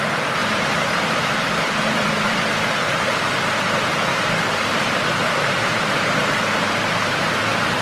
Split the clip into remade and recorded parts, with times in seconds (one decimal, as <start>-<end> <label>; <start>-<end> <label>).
0.0-0.4 recorded; 0.4-2.6 remade; 2.6-4.1 recorded; 4.1-7.8 remade